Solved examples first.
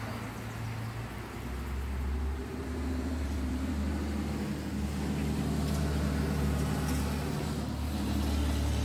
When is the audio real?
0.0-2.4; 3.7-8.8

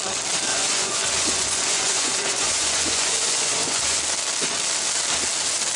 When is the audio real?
0.0-0.5; 4.0-5.8